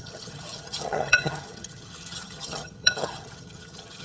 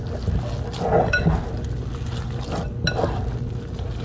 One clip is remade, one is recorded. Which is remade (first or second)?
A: first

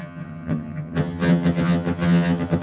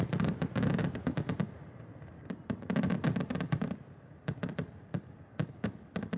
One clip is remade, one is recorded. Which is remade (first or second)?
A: first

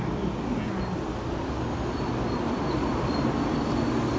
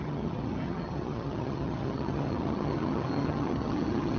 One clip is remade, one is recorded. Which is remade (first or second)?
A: second